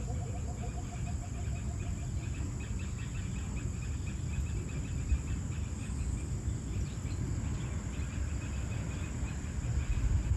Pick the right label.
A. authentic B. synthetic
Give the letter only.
A